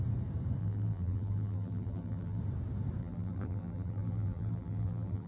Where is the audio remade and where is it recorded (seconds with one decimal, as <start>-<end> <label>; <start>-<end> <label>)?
0.0-0.6 recorded; 0.6-2.4 remade; 2.4-3.0 recorded; 3.0-5.3 remade